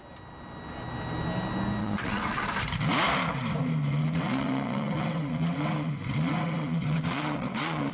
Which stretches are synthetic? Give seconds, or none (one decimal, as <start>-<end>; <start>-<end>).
1.8-2.5; 4.0-7.9